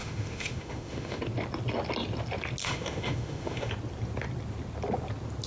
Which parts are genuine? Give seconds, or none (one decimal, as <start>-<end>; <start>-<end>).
1.2-2.6; 3.7-5.5